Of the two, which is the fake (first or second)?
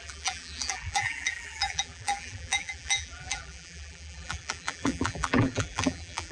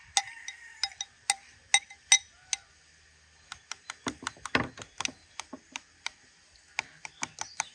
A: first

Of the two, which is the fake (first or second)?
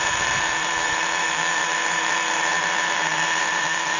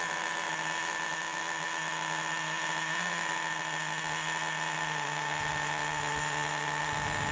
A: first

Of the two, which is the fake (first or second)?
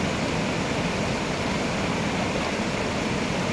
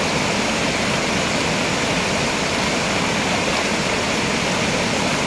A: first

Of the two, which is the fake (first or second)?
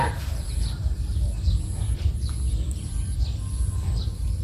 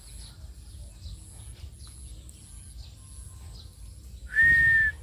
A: first